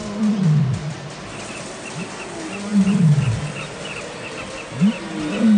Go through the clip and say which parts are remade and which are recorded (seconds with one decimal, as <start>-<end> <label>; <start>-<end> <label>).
0.0-0.9 remade; 0.9-5.6 recorded